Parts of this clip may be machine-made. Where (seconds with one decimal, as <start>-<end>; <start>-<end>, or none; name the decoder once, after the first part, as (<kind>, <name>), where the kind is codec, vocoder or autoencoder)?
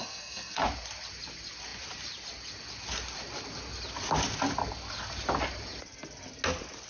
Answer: 0.0-0.6 (codec, SNAC)